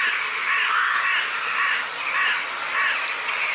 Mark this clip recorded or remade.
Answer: recorded